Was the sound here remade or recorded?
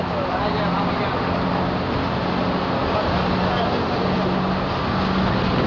recorded